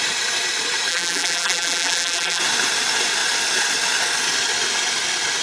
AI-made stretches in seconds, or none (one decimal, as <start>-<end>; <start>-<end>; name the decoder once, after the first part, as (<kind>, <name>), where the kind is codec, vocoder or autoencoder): 0.9-2.4 (vocoder, BigVGAN v2)